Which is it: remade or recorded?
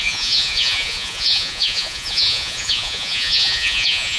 remade